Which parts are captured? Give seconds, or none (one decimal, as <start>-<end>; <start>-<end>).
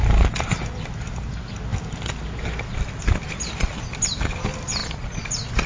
0.0-5.7